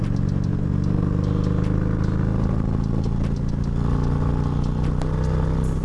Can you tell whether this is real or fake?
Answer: real